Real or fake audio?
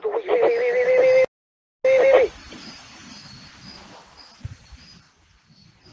real